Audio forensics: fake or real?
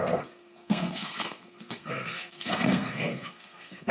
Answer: fake